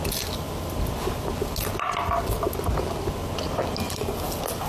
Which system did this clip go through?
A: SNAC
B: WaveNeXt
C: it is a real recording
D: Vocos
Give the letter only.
C